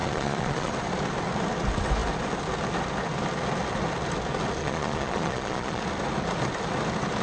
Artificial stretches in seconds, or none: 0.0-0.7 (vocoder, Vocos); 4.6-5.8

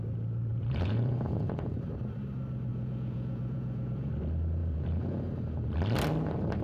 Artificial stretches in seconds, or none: 0.5-1.7 (vocoder, Vocos); 2.7-4.1; 4.6-5.2

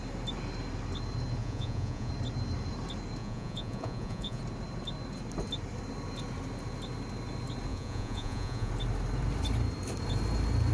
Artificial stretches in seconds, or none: 1.4-2.1 (vocoder, Vocos); 3.2-4.4; 7.7-8.7

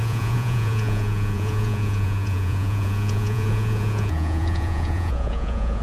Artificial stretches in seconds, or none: 0.0-5.8 (vocoder, Vocos)

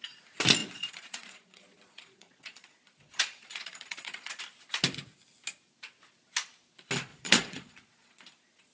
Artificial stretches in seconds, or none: 0.6-4.4 (vocoder, Vocos); 7.1-8.7

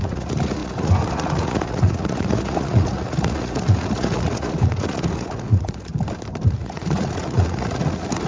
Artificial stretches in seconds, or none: 0.0-5.9 (vocoder, Vocos); 6.5-8.3

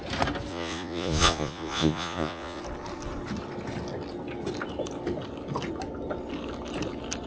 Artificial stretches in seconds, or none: 0.5-2.6 (vocoder, Vocos)